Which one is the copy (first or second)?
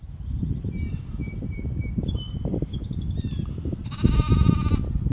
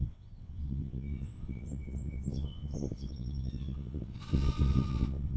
second